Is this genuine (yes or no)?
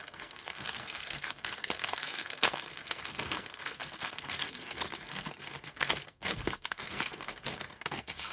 no